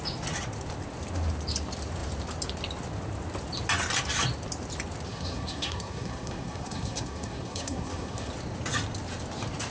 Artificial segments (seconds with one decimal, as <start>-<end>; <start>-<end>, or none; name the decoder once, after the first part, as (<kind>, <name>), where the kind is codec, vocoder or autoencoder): 5.1-8.3 (codec, SNAC)